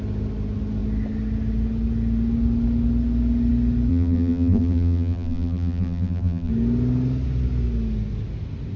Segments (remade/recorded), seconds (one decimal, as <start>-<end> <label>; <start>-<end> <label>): 0.0-3.9 recorded; 3.9-6.5 remade; 6.5-8.8 recorded